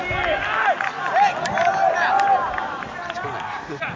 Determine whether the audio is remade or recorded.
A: recorded